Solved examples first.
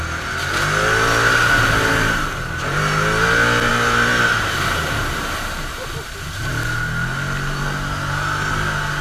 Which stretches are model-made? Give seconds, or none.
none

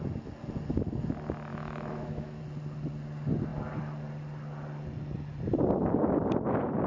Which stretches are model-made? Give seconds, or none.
1.5-2.4 (autoencoder, DAC-VAE)

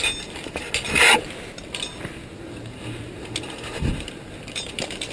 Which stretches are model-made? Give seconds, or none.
none

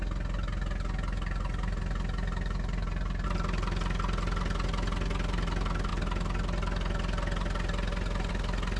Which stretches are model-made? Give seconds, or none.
none

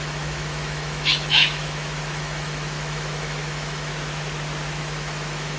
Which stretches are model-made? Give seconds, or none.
0.0-3.9 (autoencoder, DAC-VAE); 4.8-5.6